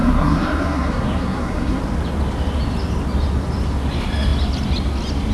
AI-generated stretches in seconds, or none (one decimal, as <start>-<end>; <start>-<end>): 0.0-1.8